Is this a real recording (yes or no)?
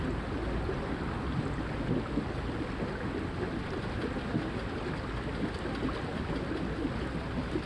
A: yes